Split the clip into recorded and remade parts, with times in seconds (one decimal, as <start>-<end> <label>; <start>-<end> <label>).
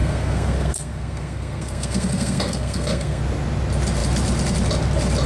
0.0-3.2 remade; 3.2-5.3 recorded